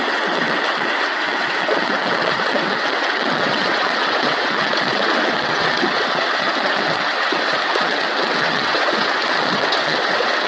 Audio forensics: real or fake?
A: fake